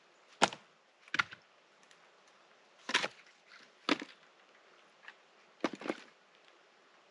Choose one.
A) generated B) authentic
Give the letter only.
B